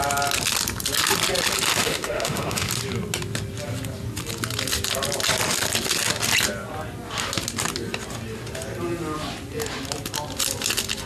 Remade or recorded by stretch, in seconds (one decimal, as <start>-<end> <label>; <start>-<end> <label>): 0.0-1.8 recorded; 1.8-2.7 remade; 2.7-11.1 recorded